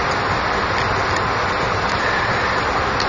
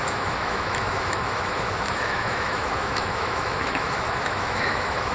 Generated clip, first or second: second